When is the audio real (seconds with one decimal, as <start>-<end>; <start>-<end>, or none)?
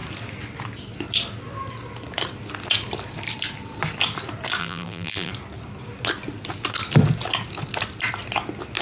0.0-4.6; 5.3-8.8